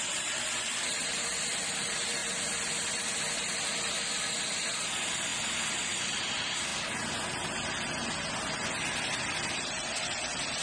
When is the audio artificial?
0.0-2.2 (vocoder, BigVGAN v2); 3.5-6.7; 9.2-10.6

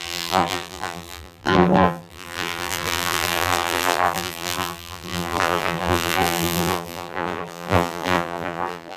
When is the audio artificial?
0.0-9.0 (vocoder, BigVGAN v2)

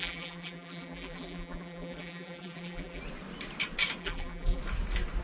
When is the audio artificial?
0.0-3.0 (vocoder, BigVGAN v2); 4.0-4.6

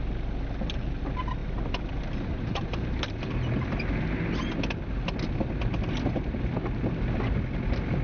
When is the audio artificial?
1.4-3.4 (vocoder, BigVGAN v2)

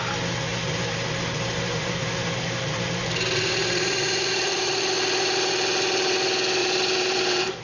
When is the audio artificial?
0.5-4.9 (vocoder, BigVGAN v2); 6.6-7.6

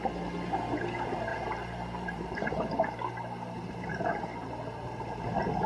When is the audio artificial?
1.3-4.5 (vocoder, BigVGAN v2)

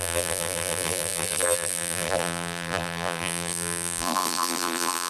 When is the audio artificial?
0.0-5.1 (vocoder, BigVGAN v2)

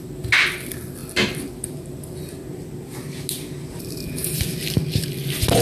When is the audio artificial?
none